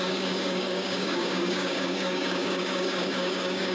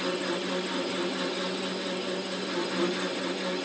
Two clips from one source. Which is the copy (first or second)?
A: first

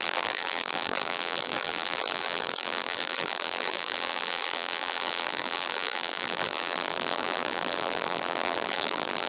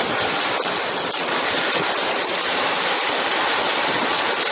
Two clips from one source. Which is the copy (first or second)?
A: first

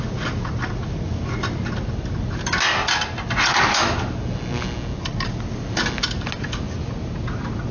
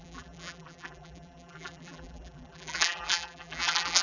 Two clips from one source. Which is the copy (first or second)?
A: second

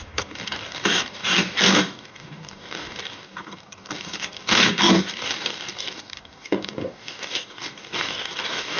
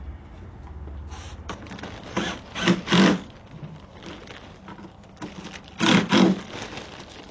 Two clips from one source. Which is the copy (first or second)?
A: first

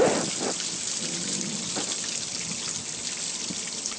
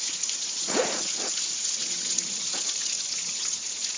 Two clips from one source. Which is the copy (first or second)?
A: second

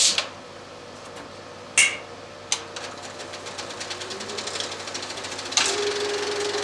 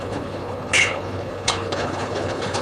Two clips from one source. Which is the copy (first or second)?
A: second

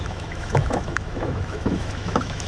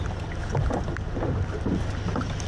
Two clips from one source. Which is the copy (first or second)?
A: first